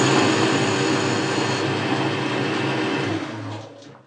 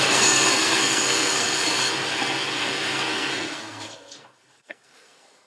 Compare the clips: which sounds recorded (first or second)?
first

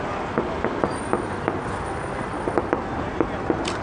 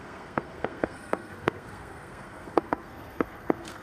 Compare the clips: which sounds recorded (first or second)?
first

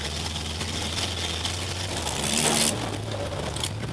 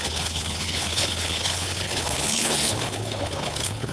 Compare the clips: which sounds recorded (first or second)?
first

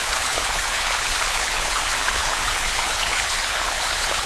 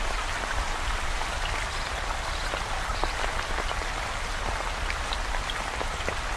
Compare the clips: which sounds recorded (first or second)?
second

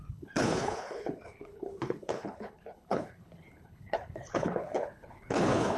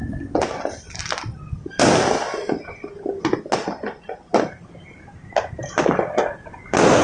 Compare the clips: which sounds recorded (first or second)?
second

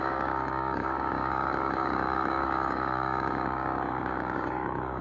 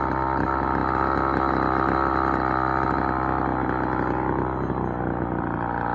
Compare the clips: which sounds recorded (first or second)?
second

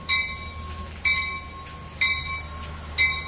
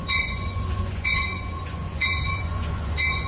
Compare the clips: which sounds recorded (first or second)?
first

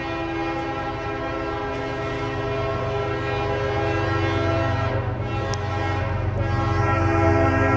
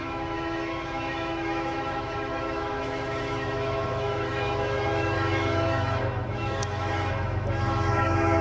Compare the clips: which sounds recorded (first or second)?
first